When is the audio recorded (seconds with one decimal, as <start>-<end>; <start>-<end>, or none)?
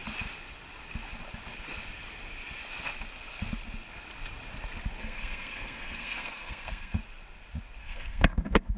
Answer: 0.0-5.0; 7.0-7.8